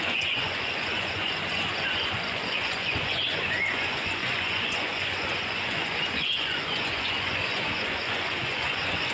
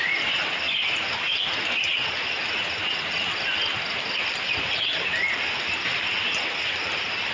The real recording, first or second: second